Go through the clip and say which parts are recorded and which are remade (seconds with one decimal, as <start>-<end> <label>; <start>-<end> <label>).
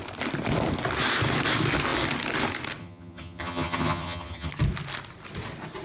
0.0-2.8 recorded; 2.8-4.5 remade; 4.5-5.8 recorded